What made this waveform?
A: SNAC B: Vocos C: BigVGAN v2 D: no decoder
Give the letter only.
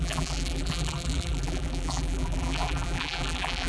C